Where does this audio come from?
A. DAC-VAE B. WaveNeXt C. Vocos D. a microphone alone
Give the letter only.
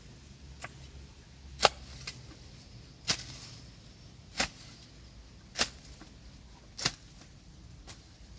D